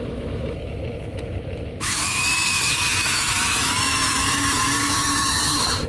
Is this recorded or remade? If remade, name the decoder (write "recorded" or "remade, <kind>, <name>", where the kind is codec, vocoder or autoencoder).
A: remade, autoencoder, DAC-VAE